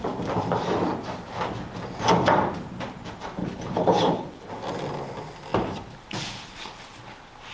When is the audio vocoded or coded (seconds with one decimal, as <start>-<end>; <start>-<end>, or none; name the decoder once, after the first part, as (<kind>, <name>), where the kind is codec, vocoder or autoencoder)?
3.4-4.5 (codec, HILCodec)